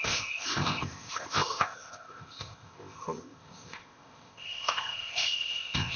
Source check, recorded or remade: remade